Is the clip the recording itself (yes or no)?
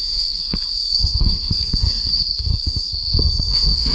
no